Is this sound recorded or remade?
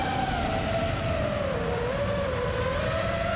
recorded